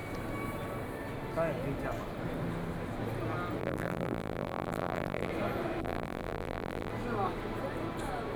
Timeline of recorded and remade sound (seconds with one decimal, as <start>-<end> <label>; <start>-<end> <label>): 0.0-3.6 recorded; 3.6-5.3 remade; 5.3-5.8 recorded; 5.8-6.9 remade; 6.9-8.4 recorded

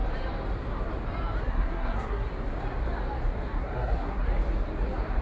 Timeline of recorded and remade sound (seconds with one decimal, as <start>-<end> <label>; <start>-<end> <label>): 0.0-1.4 recorded; 1.4-2.3 remade; 2.3-3.6 recorded; 3.6-4.3 remade; 4.3-5.2 recorded

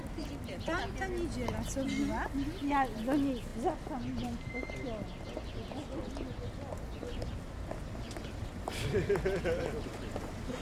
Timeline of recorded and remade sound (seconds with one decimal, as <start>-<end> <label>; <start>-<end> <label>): 0.0-10.6 recorded

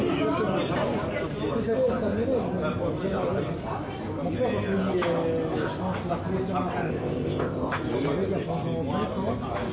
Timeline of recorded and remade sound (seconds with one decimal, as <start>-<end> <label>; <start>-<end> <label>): 0.0-6.8 recorded; 6.8-7.8 remade; 7.8-9.7 recorded

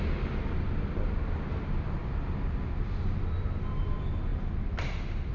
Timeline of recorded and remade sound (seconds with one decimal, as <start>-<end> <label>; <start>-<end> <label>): 0.0-5.3 recorded

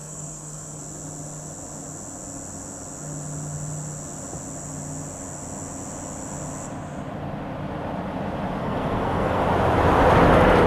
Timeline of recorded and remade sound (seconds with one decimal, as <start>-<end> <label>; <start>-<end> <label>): 0.0-0.8 remade; 0.8-8.6 recorded; 8.6-9.4 remade; 9.4-10.7 recorded

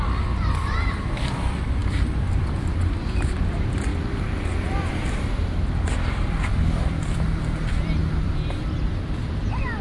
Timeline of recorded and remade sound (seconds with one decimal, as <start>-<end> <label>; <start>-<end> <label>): 0.0-1.8 remade; 1.8-2.4 recorded; 2.4-3.9 remade; 3.9-4.9 recorded; 4.9-5.4 remade; 5.4-6.1 recorded; 6.1-8.0 remade; 8.0-8.9 recorded; 8.9-9.8 remade

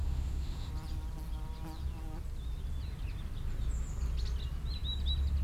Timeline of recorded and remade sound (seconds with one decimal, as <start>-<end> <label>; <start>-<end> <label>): 0.0-0.7 remade; 0.7-5.4 recorded